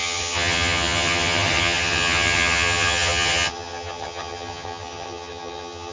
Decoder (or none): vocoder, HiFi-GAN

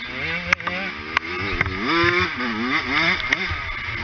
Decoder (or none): none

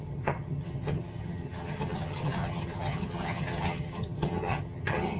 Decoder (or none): vocoder, HiFi-GAN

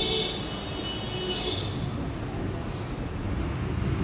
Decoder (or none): none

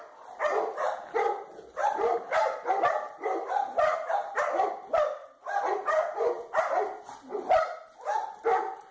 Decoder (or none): none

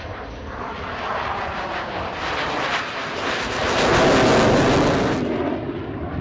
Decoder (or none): none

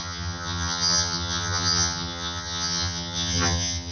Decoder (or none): vocoder, HiFi-GAN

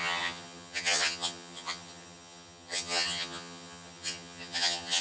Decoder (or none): vocoder, HiFi-GAN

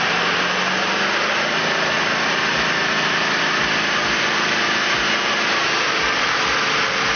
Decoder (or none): none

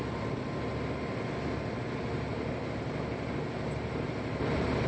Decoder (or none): none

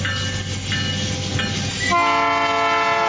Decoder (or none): none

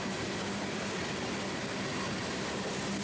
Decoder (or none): none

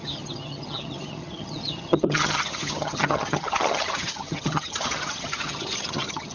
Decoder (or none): vocoder, HiFi-GAN